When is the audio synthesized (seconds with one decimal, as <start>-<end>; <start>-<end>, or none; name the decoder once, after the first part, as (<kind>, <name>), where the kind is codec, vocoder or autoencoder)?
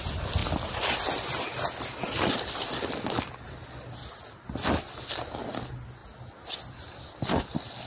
none